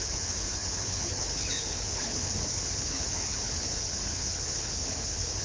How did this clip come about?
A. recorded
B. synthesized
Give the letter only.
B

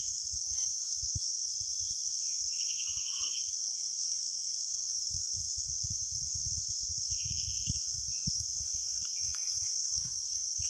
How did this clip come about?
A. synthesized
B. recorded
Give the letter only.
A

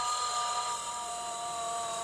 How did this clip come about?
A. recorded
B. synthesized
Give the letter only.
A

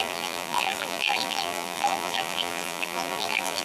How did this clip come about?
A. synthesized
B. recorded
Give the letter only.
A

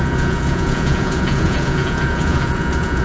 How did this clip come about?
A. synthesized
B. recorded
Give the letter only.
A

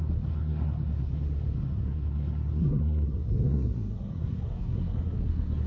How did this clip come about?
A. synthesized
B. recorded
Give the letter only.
A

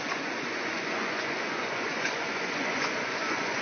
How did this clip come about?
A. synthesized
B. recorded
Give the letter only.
A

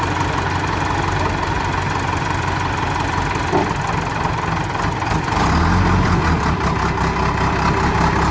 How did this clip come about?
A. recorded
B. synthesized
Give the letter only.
A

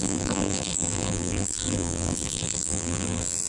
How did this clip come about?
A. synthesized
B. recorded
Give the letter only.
A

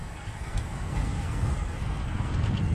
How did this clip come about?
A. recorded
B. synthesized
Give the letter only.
B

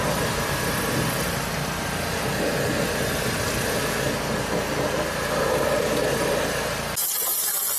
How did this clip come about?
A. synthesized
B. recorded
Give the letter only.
B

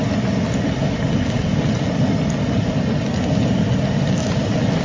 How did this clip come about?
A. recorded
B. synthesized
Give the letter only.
A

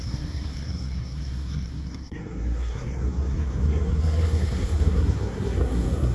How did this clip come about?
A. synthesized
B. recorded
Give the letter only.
A